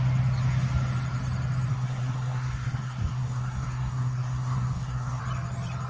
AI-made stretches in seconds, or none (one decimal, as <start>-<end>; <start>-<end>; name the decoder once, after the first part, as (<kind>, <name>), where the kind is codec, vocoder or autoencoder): 1.7-5.2 (codec, SNAC)